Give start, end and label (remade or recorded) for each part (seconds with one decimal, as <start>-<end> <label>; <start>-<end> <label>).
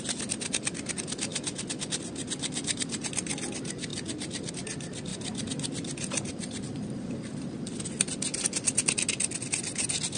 0.0-10.2 recorded